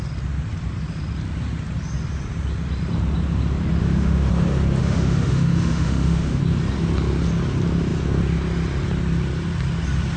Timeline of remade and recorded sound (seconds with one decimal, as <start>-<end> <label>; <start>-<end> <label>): 0.0-3.8 recorded; 3.8-4.3 remade; 4.3-4.8 recorded; 4.8-6.4 remade; 6.4-10.2 recorded